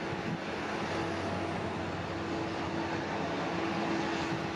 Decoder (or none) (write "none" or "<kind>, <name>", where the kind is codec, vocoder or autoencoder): none